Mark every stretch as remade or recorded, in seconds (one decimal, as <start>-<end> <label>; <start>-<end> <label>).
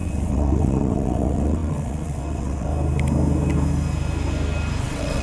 0.0-2.7 remade; 2.7-4.8 recorded; 4.8-5.2 remade